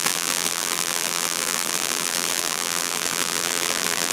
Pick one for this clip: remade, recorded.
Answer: remade